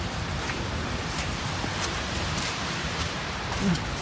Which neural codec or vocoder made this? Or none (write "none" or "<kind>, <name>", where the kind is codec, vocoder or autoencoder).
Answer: vocoder, BigVGAN v2